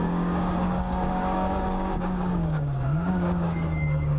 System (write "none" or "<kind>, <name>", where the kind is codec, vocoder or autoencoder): codec, DAC